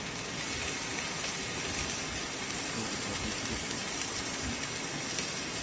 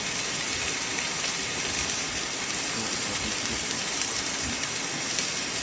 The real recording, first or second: first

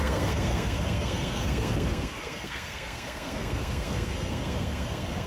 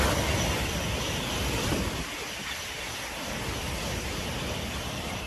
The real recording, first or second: second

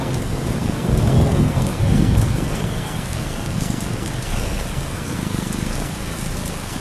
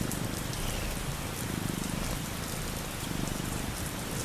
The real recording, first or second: second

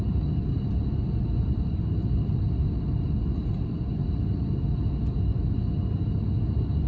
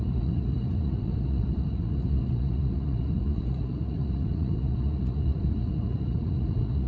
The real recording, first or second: first